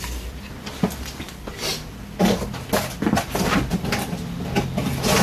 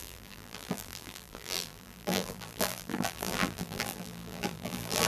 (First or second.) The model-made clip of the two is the second